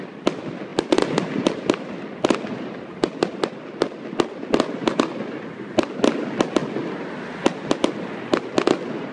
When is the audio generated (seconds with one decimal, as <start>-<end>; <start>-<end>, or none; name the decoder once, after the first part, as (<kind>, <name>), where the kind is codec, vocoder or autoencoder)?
2.5-3.1 (vocoder, BigVGAN v2)